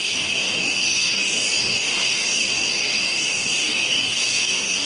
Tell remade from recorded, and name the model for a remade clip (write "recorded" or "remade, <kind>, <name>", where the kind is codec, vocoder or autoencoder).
remade, codec, DAC